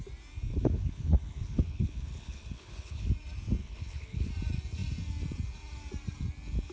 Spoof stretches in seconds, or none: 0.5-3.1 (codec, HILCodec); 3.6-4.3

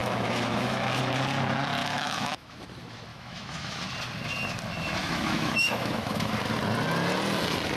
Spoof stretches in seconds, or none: 0.0-1.0 (autoencoder, DAC-VAE); 1.8-2.6; 3.1-3.8; 5.0-6.3

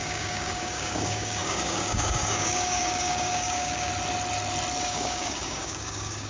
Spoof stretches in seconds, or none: 0.0-3.9 (codec, DAC); 4.8-6.3

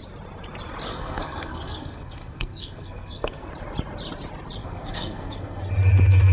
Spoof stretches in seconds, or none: 0.9-3.5 (codec, SNAC); 4.6-5.6